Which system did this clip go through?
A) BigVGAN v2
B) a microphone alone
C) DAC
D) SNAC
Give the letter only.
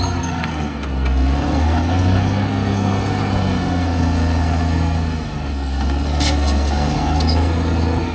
D